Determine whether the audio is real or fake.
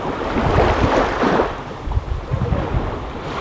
real